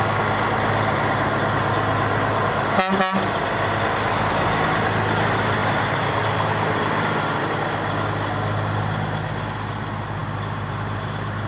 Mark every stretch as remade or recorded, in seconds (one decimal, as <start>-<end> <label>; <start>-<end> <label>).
0.0-11.5 recorded